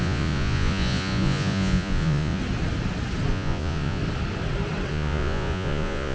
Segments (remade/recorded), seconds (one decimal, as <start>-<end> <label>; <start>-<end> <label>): 0.0-2.4 remade; 2.4-3.3 recorded; 3.3-4.0 remade; 4.0-4.9 recorded; 4.9-6.1 remade